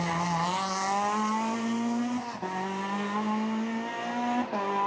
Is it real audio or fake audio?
real